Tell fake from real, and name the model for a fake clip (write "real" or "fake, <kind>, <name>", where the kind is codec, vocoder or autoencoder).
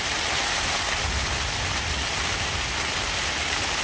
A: real